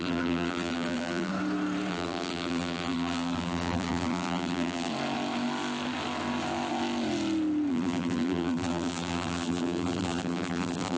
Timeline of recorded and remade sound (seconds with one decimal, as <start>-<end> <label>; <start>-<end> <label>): 0.0-1.3 remade; 1.3-1.9 recorded; 1.9-4.9 remade; 4.9-7.7 recorded; 7.7-11.0 remade